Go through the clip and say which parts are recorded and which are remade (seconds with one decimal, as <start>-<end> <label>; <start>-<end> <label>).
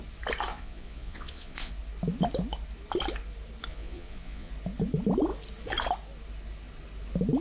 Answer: 0.0-0.5 recorded; 0.5-1.7 remade; 1.7-3.7 recorded; 3.7-4.5 remade; 4.5-7.4 recorded